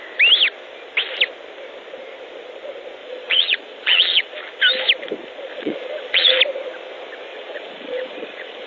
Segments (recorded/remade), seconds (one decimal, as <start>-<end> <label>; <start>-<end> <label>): 0.0-3.0 recorded; 3.0-4.4 remade; 4.4-5.5 recorded; 5.5-6.4 remade; 6.4-7.3 recorded; 7.3-8.7 remade